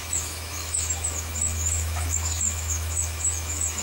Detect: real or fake fake